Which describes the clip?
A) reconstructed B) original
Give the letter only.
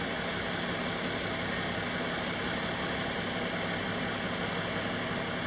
B